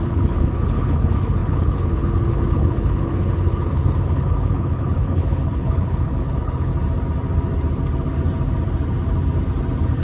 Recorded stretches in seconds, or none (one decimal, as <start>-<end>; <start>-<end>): 6.7-10.0